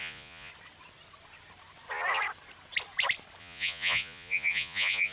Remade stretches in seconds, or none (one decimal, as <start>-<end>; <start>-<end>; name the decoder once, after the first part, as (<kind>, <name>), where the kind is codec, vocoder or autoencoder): 0.0-0.5 (vocoder, Vocos); 3.4-5.1